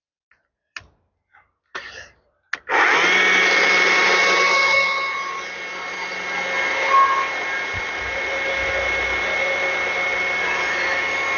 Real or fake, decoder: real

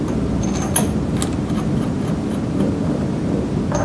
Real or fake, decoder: real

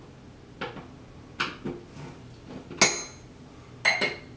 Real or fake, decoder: real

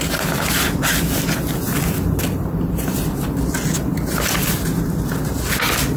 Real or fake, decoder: real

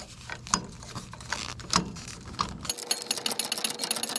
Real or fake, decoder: real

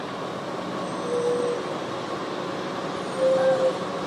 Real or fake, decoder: real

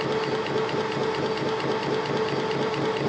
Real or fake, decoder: real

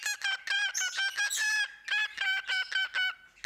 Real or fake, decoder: real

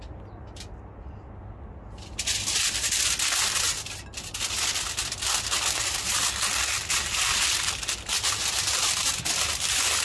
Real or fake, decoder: real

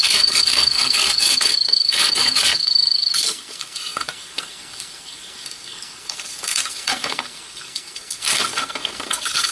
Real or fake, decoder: fake, codec, SNAC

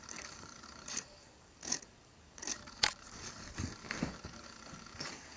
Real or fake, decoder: fake, codec, DAC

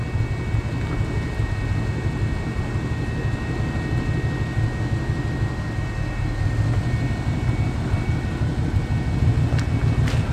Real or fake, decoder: real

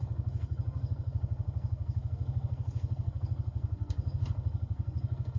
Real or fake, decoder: fake, codec, SNAC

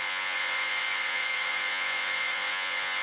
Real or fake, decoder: fake, vocoder, Vocos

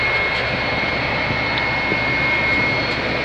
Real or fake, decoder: real